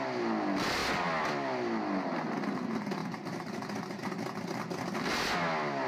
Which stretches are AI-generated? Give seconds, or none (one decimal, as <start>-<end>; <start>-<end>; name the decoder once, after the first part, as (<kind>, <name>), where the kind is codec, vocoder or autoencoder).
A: none